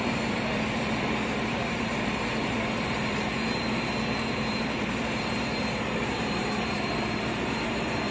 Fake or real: fake